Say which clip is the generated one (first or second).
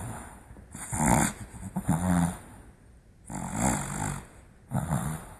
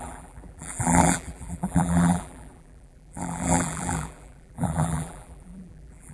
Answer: second